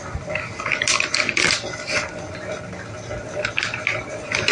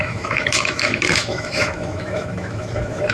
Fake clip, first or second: second